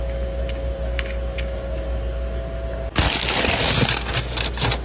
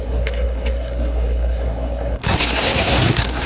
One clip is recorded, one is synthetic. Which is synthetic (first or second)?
second